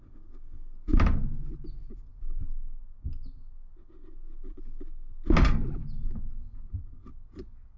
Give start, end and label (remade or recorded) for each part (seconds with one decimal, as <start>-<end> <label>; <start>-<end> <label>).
0.0-7.8 recorded